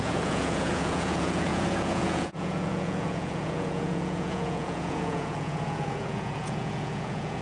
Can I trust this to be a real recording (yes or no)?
no